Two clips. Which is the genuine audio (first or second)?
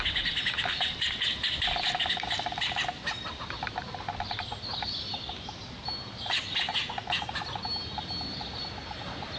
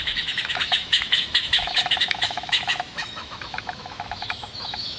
first